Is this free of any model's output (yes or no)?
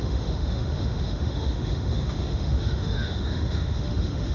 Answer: no